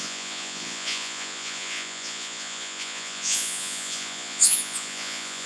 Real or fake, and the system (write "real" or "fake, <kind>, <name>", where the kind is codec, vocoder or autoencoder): fake, vocoder, Vocos